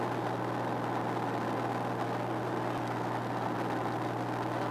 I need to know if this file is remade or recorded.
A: recorded